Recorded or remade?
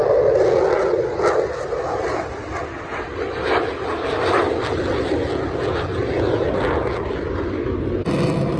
recorded